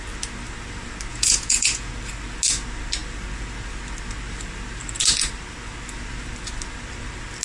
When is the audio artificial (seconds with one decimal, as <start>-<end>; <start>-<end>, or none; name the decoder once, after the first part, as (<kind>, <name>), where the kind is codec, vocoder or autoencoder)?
1.1-1.9 (vocoder, Vocos)